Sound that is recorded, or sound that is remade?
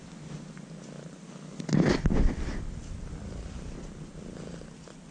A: recorded